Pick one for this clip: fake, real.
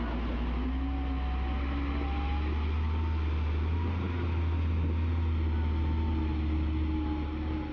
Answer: real